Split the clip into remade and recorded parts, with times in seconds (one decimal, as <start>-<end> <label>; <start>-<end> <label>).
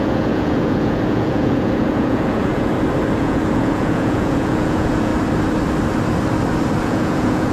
0.0-2.7 remade; 2.7-3.2 recorded; 3.2-5.1 remade; 5.1-6.8 recorded; 6.8-7.5 remade